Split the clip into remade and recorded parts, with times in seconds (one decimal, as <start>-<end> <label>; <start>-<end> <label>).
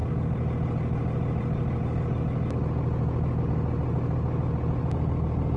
0.0-5.6 recorded